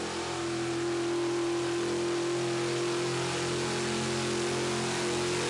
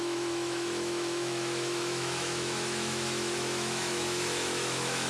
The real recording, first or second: first